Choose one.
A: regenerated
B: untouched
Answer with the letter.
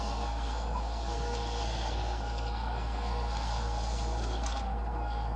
A